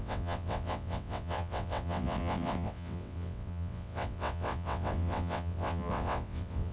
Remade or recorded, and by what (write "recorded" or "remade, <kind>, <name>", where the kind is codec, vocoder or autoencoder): remade, vocoder, WaveNeXt